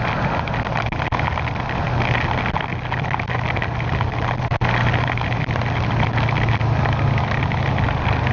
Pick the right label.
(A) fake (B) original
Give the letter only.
B